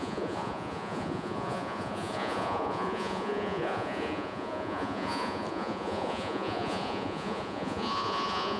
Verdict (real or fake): fake